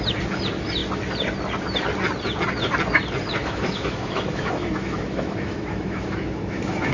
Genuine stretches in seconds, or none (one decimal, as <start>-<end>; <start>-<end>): 0.0-3.4